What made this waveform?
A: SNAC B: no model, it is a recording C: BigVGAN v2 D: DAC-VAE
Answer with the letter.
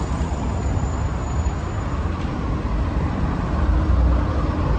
B